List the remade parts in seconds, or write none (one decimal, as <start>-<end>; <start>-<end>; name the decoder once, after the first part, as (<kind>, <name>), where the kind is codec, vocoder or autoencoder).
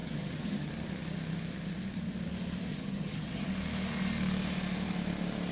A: 0.0-0.7 (vocoder, HiFi-GAN); 2.7-3.5